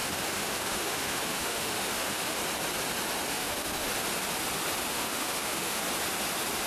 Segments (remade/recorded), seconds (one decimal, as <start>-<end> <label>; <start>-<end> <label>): 0.0-2.4 remade; 2.4-3.3 recorded; 3.3-3.9 remade; 3.9-4.9 recorded; 4.9-5.8 remade; 5.8-6.7 recorded